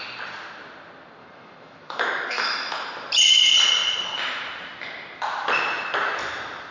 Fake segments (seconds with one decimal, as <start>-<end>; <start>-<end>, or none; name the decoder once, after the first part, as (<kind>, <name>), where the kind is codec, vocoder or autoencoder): 1.2-2.7 (autoencoder, DAC-VAE)